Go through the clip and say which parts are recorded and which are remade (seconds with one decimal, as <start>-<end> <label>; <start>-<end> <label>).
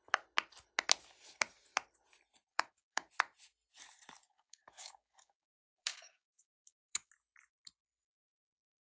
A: 0.0-2.5 recorded; 2.5-3.1 remade; 3.1-4.2 recorded; 4.2-7.1 remade; 7.1-8.9 recorded